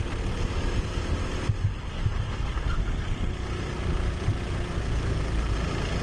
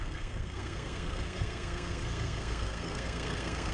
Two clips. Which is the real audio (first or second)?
first